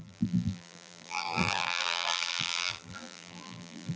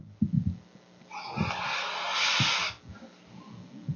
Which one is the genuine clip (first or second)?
second